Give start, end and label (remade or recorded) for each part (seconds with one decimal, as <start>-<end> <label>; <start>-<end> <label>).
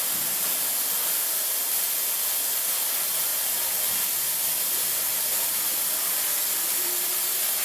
0.0-3.3 recorded; 3.3-6.9 remade; 6.9-7.6 recorded